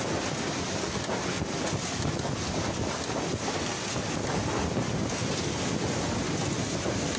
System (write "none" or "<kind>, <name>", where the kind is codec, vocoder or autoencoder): none